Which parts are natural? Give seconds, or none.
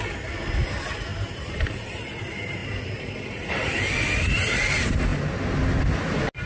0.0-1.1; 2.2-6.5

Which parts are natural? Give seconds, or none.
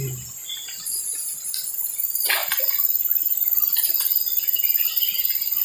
0.0-0.4; 1.0-5.6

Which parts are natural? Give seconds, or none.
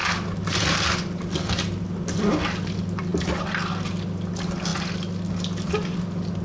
1.5-6.4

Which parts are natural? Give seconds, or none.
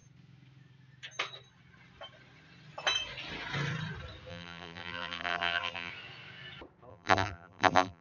0.0-4.3; 5.9-6.9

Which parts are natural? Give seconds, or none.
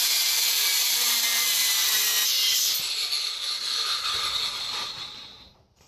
1.6-4.4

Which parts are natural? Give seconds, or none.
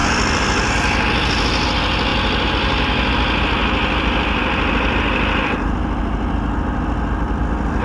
0.7-3.6; 6.0-7.8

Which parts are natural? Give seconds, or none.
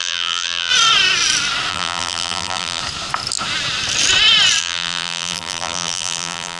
0.7-1.7; 2.8-4.6